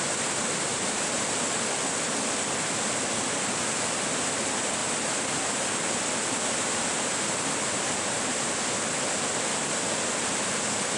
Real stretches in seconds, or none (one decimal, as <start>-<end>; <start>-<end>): 0.0-0.7; 1.3-4.8; 8.5-11.0